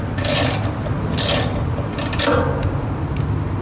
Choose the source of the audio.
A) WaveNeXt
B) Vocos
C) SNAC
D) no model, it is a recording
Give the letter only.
D